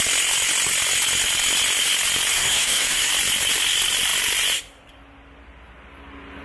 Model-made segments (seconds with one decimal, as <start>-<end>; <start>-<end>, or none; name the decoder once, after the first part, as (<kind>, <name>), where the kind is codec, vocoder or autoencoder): 2.3-3.1 (codec, SNAC)